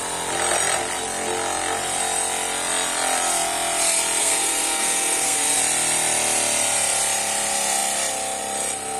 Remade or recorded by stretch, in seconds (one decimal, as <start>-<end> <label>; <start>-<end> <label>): 0.0-4.2 recorded; 4.2-5.6 remade; 5.6-9.0 recorded